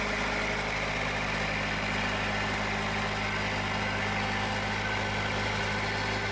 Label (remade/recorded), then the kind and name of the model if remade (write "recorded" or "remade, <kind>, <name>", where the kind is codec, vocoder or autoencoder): recorded